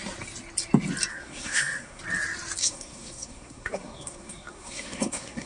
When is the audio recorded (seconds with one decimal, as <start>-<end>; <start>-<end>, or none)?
0.0-1.1; 2.0-2.6